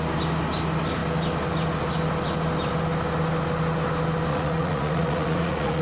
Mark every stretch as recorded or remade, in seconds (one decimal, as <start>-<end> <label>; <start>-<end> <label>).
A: 0.0-4.3 recorded; 4.3-5.8 remade